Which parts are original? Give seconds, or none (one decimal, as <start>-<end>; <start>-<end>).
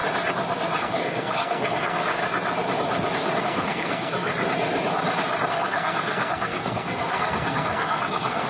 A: 0.0-0.8; 2.2-3.4; 4.3-5.5